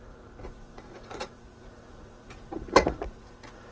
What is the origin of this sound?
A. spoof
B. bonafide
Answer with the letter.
A